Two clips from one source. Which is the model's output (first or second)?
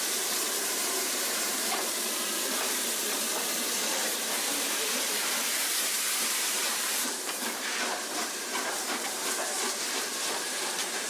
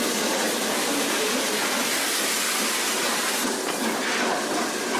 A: first